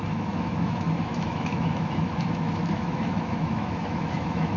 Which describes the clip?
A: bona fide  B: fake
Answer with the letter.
B